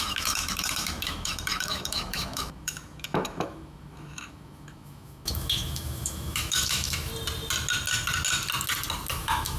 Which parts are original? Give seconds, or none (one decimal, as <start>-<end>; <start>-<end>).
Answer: 7.1-9.1